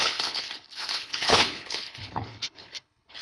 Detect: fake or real fake